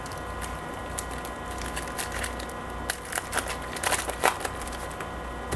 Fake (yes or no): no